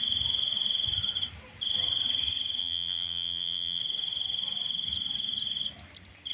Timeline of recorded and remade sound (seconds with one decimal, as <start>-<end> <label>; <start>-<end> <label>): 0.0-2.6 recorded; 2.6-3.8 remade; 3.8-6.3 recorded